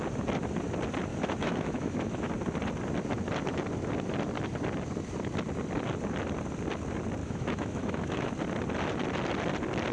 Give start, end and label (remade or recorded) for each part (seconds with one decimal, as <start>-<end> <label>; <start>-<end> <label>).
0.0-1.1 recorded; 1.1-2.3 remade; 2.3-7.2 recorded; 7.2-8.3 remade; 8.3-9.9 recorded